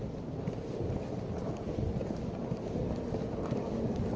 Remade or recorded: recorded